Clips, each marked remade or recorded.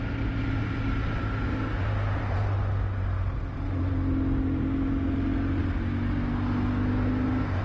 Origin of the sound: recorded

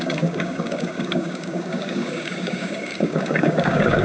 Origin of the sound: remade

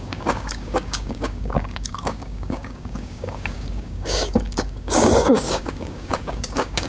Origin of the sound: remade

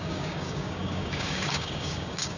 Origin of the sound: remade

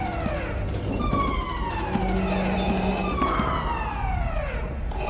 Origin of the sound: recorded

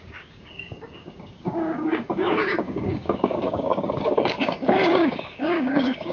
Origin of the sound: remade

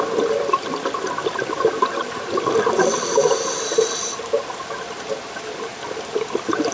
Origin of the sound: recorded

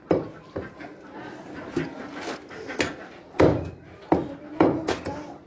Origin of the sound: recorded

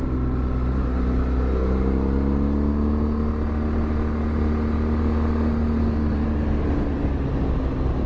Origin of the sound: recorded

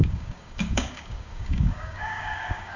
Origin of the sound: remade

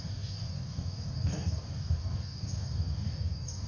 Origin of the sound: remade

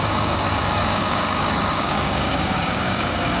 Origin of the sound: remade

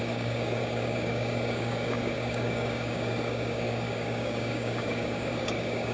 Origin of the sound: remade